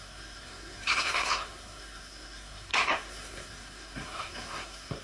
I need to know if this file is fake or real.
fake